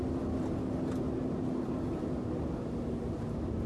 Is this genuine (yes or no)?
yes